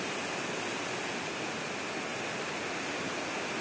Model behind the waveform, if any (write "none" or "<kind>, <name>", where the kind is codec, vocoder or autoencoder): none